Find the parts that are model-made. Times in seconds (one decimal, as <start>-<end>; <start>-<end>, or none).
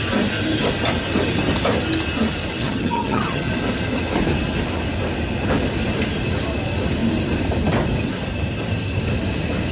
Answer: 2.6-3.5